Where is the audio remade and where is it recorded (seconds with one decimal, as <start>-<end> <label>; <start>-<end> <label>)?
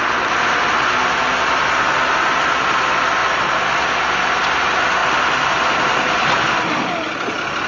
0.0-7.7 recorded